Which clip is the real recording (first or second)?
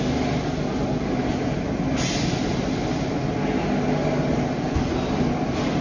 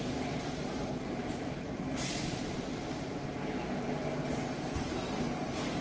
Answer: first